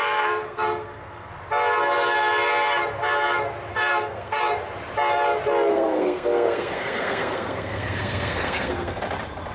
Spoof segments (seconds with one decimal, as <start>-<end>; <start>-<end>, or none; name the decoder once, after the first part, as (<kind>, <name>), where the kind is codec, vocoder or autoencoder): 0.0-1.3 (codec, SNAC); 3.7-4.4; 5.7-9.0